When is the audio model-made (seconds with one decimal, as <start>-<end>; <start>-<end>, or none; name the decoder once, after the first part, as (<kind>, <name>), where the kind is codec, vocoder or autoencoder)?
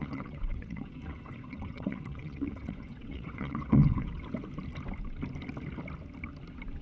0.0-4.1 (vocoder, WaveNeXt)